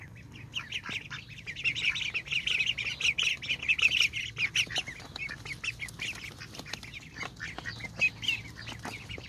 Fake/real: real